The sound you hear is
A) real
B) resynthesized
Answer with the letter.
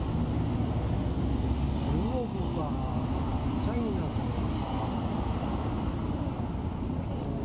A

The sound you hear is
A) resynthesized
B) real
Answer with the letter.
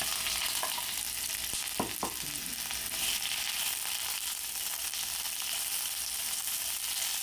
B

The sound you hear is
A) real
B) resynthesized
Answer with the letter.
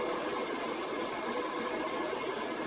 A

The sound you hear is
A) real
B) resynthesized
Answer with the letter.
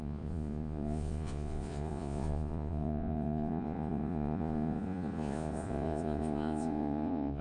B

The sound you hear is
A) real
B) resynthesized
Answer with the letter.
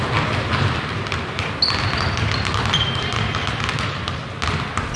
A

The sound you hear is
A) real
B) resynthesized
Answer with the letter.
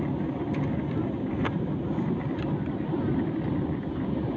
A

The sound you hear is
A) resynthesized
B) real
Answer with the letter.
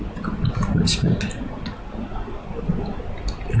B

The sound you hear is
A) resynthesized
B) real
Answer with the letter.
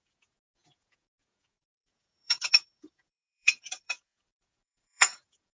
A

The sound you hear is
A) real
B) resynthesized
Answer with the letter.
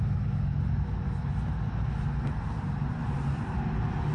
A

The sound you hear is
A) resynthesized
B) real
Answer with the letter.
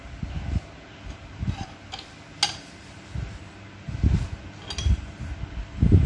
B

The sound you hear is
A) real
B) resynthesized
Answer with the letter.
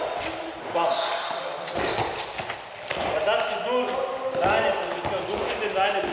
A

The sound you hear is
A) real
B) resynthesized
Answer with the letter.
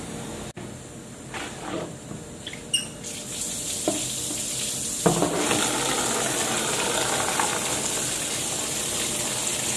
A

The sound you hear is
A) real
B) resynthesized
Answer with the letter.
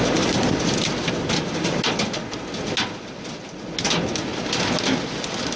A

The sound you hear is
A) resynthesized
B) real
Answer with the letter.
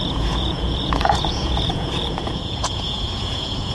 A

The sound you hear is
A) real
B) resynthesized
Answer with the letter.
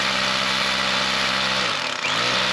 A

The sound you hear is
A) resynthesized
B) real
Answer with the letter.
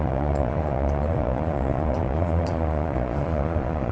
A